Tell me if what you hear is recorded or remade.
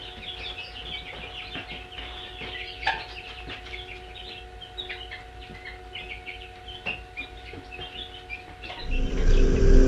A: recorded